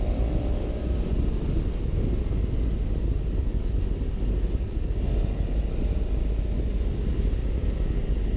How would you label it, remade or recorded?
recorded